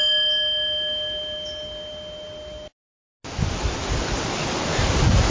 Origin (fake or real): real